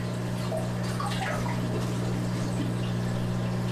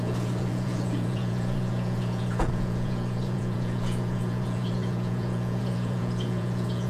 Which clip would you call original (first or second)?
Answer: first